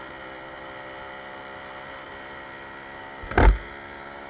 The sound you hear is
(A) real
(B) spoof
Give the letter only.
A